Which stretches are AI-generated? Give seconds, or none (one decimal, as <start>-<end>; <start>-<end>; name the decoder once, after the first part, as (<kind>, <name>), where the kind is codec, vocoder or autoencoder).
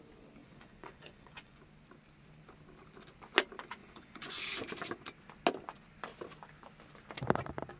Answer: 0.4-1.6 (vocoder, Vocos); 3.8-4.4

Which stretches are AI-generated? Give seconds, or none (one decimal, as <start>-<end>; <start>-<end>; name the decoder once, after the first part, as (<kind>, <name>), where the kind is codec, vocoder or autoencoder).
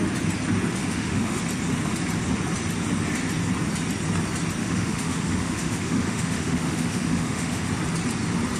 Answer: 0.8-1.4 (autoencoder, DAC-VAE); 4.6-7.7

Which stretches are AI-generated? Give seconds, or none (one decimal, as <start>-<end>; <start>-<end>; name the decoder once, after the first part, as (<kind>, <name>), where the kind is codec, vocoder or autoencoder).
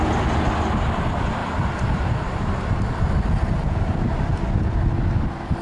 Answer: 1.4-2.1 (vocoder, BigVGAN v2)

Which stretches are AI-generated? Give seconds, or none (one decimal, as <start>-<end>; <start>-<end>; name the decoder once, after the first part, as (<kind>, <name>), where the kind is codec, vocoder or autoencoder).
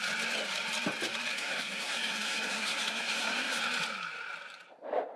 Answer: 1.3-3.6 (codec, SNAC)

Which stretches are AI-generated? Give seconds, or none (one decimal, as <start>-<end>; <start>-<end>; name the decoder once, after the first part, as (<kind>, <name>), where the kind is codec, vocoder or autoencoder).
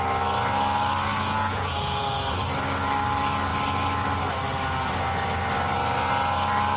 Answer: 1.1-2.2 (vocoder, Vocos)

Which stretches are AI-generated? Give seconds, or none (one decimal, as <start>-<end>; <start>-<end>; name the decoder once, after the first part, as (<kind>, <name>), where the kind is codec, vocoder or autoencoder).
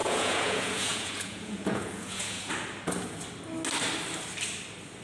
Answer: 0.0-2.5 (vocoder, Vocos)